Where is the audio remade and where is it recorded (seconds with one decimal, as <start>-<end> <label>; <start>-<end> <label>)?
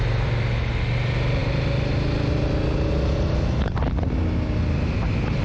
0.0-5.4 recorded